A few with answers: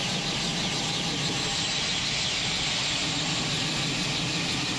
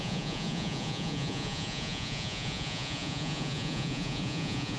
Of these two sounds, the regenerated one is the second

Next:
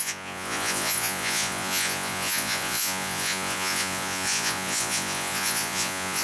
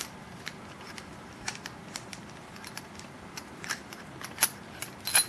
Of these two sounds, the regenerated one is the first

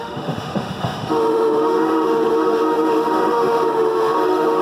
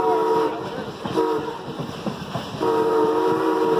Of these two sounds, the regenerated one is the first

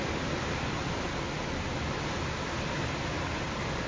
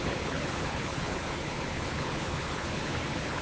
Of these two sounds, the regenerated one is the second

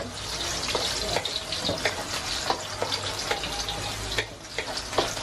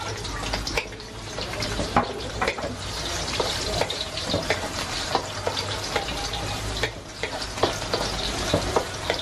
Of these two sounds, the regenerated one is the second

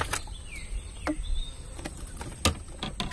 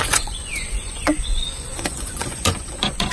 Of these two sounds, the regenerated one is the second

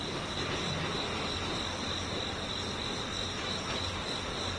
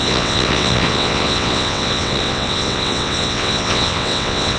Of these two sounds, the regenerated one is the second